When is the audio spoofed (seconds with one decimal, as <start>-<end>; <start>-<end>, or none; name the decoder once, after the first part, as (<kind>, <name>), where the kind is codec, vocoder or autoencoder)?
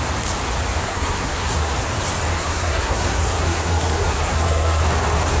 0.8-1.7 (codec, SNAC); 2.3-4.8